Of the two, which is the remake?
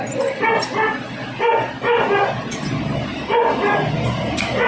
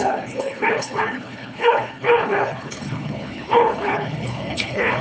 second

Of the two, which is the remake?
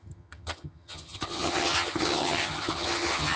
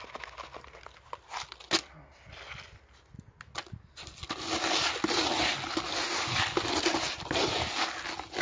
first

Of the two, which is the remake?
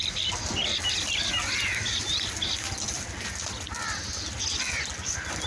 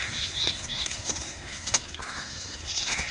second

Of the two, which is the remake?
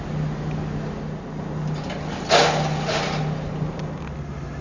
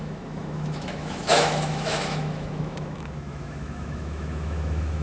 second